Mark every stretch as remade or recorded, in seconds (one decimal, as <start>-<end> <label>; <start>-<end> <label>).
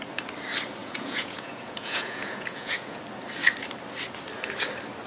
0.0-0.8 recorded; 0.8-3.0 remade; 3.0-5.1 recorded